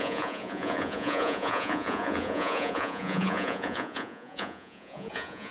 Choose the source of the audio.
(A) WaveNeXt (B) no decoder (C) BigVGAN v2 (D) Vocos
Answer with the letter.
D